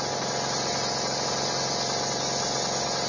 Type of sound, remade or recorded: recorded